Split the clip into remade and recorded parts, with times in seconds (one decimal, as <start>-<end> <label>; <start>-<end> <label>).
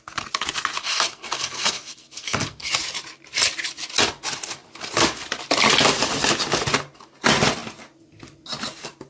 0.0-0.8 recorded; 0.8-2.7 remade; 2.7-9.1 recorded